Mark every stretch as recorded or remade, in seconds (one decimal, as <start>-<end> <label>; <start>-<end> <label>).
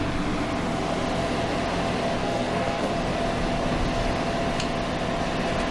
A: 0.0-2.2 recorded; 2.2-2.9 remade; 2.9-5.7 recorded